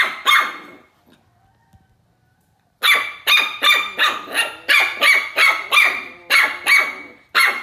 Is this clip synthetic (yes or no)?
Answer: no